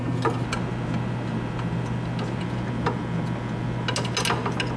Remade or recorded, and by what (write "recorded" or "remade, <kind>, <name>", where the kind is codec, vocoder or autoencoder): recorded